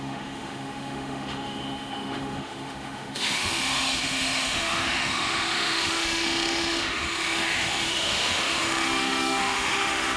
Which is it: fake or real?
fake